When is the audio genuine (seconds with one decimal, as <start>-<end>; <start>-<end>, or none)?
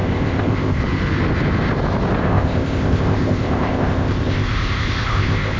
0.8-2.2